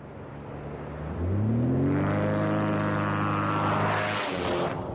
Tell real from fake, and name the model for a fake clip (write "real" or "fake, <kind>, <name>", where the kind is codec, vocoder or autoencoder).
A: real